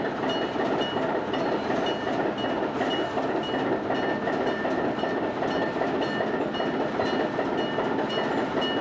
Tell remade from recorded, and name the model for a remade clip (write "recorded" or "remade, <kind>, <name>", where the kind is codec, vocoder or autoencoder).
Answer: recorded